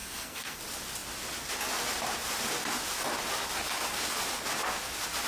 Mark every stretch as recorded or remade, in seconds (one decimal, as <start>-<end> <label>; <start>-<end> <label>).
0.0-0.6 remade; 0.6-5.3 recorded